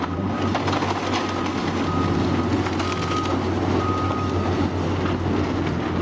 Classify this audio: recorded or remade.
recorded